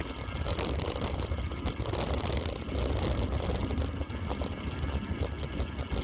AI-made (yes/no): no